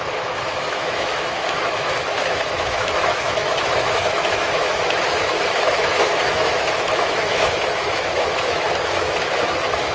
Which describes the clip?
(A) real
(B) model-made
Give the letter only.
B